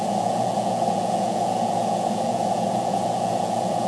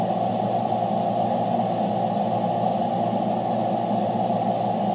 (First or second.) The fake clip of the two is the first